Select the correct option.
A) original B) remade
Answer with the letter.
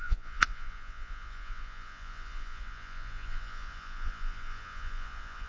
B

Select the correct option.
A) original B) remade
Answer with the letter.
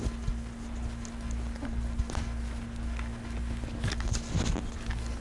A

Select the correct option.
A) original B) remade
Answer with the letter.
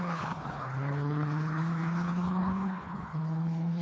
B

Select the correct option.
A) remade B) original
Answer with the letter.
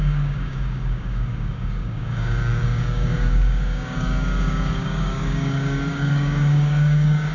A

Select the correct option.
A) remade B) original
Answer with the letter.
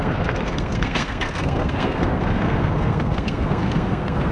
A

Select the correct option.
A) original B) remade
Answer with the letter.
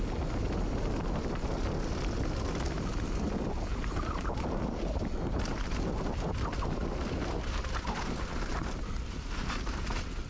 A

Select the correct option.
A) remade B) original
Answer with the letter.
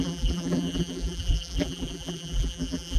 A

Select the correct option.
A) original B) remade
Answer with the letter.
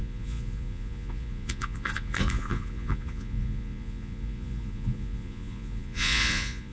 B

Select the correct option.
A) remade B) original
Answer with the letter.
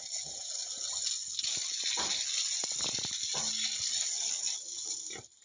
B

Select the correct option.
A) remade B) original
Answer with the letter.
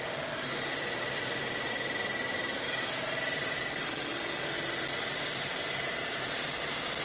B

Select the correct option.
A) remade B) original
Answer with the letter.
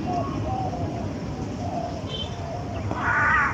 B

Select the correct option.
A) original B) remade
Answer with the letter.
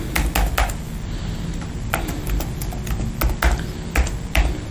A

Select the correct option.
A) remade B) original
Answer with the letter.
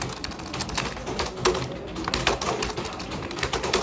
B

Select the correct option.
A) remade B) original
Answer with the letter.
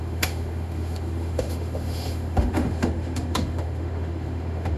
A